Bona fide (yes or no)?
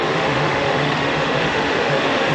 no